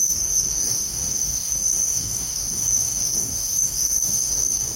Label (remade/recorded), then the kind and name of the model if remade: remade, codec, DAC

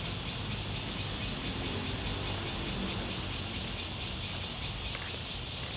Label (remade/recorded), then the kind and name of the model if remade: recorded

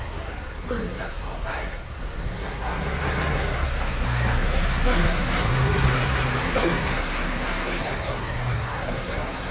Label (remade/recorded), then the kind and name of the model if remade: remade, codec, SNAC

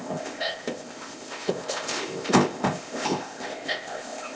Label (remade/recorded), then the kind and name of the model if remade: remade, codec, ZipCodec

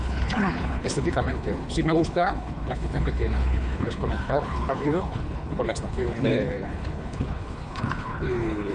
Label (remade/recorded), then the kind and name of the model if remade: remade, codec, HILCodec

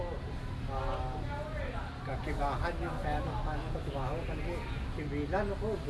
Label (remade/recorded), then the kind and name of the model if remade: recorded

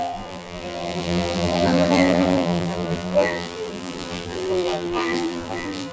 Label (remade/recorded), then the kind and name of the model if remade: remade, vocoder, BigVGAN v2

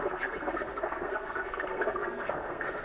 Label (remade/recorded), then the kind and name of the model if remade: remade, codec, SNAC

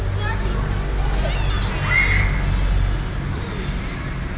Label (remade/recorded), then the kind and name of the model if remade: recorded